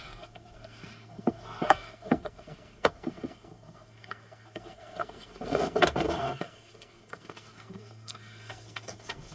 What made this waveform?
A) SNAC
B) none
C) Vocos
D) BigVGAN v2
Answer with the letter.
A